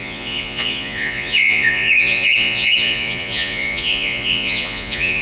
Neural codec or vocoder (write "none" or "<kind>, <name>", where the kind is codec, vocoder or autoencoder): vocoder, Vocos